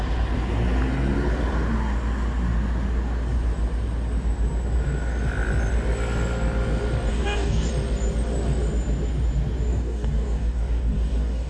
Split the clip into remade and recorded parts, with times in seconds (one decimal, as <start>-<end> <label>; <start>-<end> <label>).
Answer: 0.0-7.1 recorded; 7.1-7.7 remade; 7.7-9.7 recorded; 9.7-11.5 remade